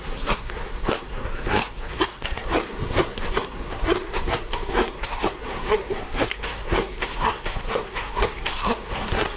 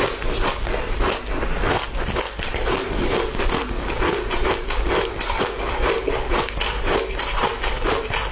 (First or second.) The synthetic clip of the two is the first